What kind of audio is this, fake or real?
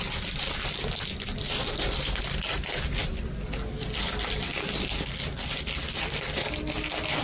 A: real